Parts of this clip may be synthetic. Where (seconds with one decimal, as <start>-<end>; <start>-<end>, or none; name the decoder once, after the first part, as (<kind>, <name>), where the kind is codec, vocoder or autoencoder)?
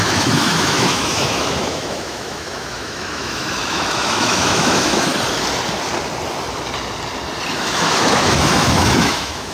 0.0-5.1 (autoencoder, DAC-VAE); 7.5-9.5